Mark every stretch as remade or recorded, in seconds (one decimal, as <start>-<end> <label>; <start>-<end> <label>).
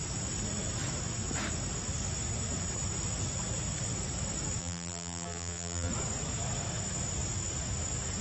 0.0-4.6 recorded; 4.6-5.9 remade; 5.9-8.2 recorded